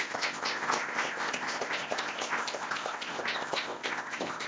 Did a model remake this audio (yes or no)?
yes